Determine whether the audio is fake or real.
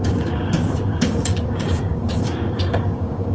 fake